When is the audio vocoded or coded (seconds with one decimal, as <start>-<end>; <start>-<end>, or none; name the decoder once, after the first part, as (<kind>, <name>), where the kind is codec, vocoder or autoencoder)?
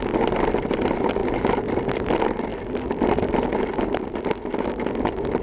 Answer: none